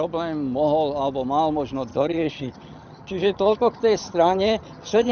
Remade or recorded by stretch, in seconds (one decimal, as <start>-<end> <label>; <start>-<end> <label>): 0.0-1.9 recorded; 1.9-5.1 remade